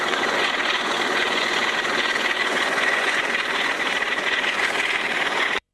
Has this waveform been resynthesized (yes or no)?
yes